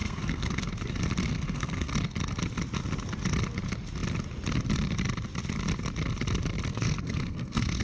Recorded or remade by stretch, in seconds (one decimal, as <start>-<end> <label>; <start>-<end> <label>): 0.0-0.7 remade; 0.7-1.3 recorded; 1.3-1.9 remade; 1.9-6.7 recorded; 6.7-7.8 remade

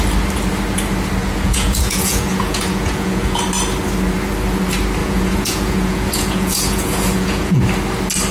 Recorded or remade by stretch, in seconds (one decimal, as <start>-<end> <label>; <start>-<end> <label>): 0.0-1.2 recorded; 1.2-3.4 remade; 3.4-5.0 recorded; 5.0-7.6 remade; 7.6-8.3 recorded